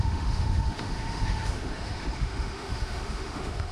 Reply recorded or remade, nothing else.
remade